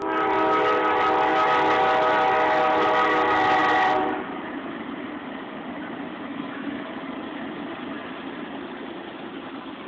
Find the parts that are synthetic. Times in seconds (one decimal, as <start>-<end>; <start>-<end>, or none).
6.3-6.9